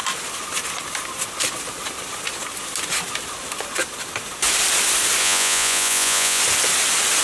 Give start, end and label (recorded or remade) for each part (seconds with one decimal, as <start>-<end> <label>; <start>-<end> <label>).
0.0-5.2 recorded; 5.2-6.4 remade; 6.4-7.2 recorded